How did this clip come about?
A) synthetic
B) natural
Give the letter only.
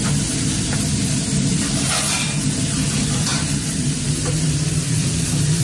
A